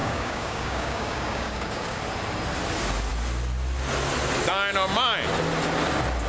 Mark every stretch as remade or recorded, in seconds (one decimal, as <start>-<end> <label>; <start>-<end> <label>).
0.0-2.0 remade; 2.0-6.3 recorded